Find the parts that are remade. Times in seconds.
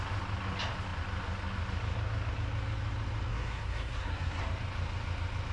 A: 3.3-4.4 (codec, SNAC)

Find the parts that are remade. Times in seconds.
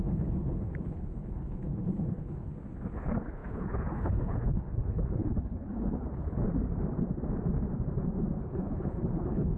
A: 0.0-2.5 (codec, HILCodec); 3.0-6.4; 8.4-9.6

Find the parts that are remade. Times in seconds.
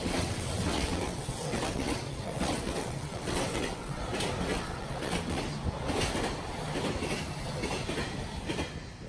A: 0.0-4.0 (vocoder, WaveNeXt); 4.5-5.4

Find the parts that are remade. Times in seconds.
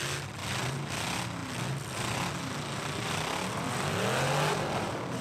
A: none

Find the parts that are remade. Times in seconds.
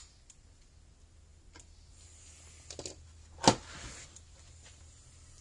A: none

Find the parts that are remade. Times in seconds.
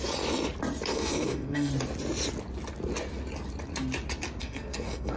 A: 0.9-1.7 (codec, SNAC); 4.4-5.2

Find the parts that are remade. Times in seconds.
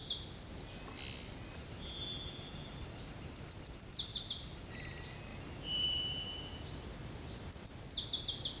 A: 5.3-7.8 (vocoder, BigVGAN v2)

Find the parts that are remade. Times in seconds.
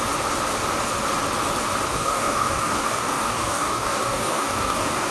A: 1.9-5.1 (codec, DAC)